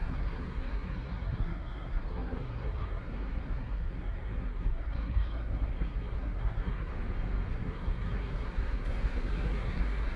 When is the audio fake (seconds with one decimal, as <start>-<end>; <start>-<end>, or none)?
0.0-6.9; 7.5-10.2